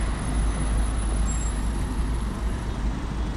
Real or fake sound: real